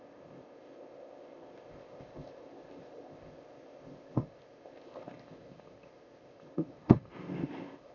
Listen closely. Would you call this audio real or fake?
fake